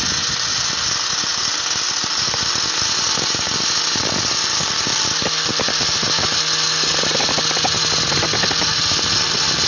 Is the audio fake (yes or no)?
no